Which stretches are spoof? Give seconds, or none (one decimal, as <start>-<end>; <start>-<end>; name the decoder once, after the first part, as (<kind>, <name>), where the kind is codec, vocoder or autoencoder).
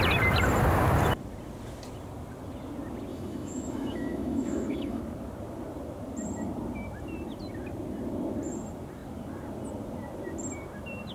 3.1-5.0 (autoencoder, DAC-VAE)